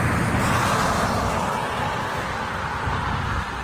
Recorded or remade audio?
recorded